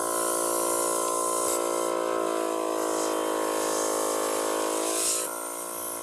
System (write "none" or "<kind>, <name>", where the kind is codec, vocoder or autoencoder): none